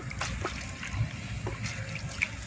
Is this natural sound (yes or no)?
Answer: yes